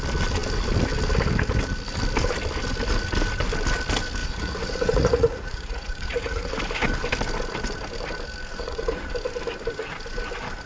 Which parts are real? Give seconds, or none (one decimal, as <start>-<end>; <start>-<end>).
0.0-4.2; 6.6-8.5; 9.1-10.7

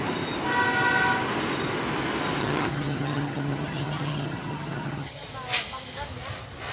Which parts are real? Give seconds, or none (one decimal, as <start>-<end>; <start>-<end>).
0.0-2.4; 5.3-6.7